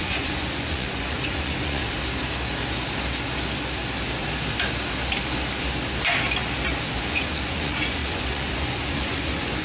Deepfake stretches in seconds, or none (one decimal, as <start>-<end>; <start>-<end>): 0.0-1.8; 7.0-9.6

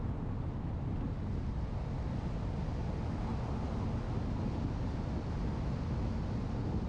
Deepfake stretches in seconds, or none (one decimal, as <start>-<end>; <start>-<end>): none

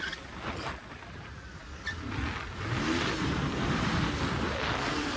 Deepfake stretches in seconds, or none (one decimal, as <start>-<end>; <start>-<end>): none

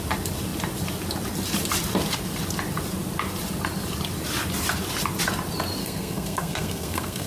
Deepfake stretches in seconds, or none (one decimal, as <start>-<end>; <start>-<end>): 5.8-7.3